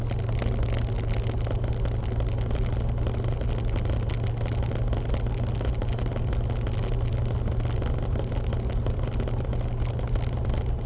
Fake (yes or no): no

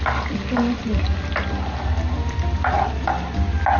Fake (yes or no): no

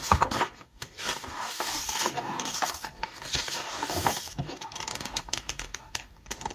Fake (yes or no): yes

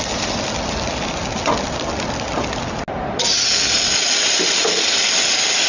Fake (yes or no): no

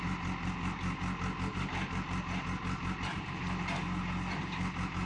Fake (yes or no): no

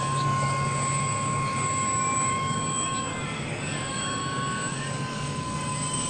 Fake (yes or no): yes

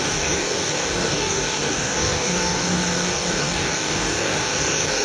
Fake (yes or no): yes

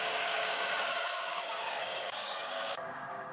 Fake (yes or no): yes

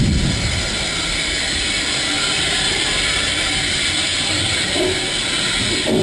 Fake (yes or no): no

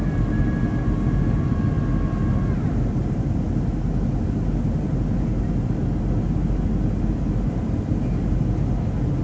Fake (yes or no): no